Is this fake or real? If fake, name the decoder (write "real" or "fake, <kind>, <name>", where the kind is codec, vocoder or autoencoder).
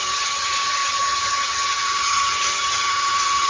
fake, vocoder, HiFi-GAN